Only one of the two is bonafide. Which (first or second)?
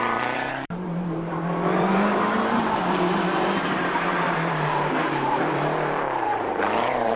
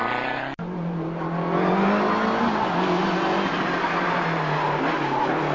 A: second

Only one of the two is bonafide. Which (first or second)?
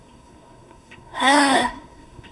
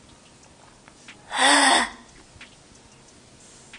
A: second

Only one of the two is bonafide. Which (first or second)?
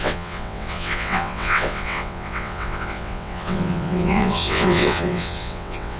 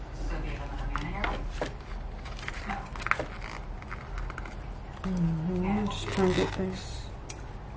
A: second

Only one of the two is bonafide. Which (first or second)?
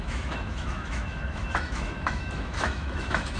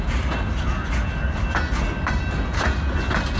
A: second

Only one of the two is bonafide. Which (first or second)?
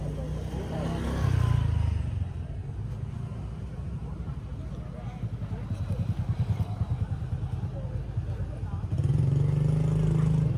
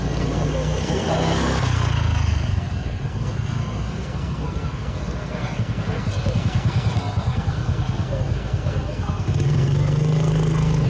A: first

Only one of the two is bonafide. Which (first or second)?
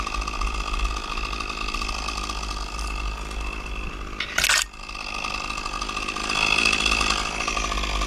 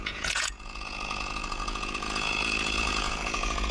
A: first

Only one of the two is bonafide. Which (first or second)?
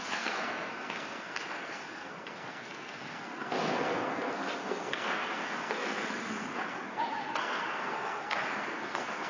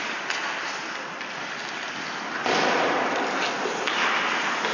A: second